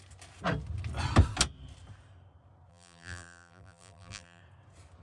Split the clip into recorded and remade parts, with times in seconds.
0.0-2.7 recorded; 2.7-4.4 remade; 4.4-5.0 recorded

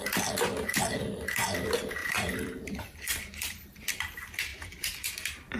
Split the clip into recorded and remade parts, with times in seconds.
0.0-2.0 recorded; 2.0-3.8 remade; 3.8-4.5 recorded; 4.5-5.1 remade; 5.1-5.6 recorded

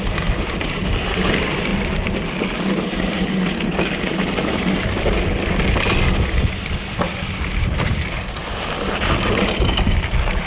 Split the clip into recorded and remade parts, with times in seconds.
0.0-10.5 recorded

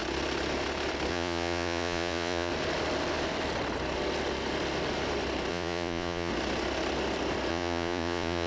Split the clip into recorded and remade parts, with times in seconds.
0.0-1.1 recorded; 1.1-2.5 remade; 2.5-5.5 recorded; 5.5-6.3 remade; 6.3-7.5 recorded; 7.5-8.5 remade

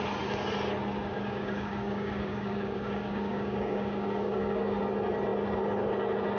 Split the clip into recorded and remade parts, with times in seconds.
0.0-1.0 recorded; 1.0-4.8 remade; 4.8-6.4 recorded

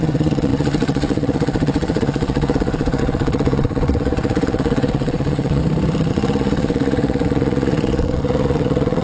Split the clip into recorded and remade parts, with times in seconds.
0.0-5.6 remade; 5.6-6.1 recorded; 6.1-9.0 remade

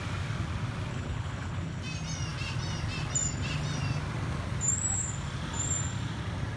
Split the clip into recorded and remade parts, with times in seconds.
0.0-0.9 recorded; 0.9-1.8 remade; 1.8-6.6 recorded